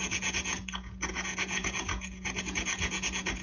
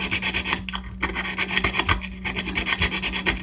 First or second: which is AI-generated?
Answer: first